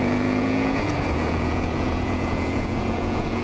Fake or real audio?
fake